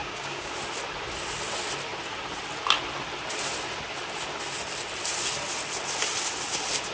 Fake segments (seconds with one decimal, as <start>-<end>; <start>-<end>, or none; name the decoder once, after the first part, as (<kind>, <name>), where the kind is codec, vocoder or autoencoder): 0.0-0.5 (codec, DAC)